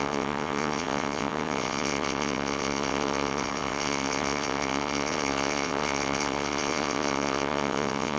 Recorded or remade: remade